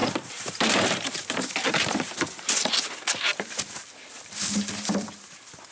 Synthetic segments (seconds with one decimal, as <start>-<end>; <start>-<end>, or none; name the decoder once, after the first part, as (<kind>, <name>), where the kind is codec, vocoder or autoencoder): 0.0-1.2 (vocoder, BigVGAN v2)